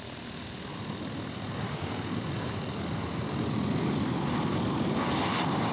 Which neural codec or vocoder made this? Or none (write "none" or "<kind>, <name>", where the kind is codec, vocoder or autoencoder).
none